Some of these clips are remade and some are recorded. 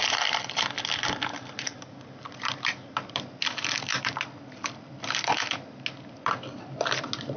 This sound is recorded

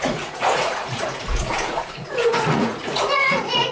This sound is remade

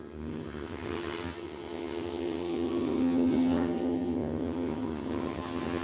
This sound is remade